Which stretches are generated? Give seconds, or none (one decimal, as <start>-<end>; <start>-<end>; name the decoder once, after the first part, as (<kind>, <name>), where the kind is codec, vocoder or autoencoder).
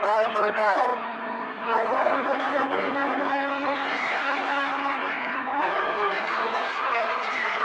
0.0-7.6 (codec, SNAC)